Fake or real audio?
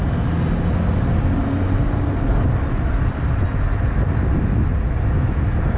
real